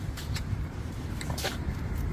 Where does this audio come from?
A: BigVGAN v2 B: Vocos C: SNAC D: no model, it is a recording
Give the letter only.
A